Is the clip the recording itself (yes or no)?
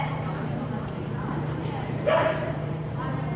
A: no